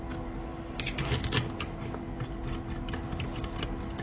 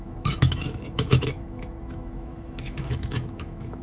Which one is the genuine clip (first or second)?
first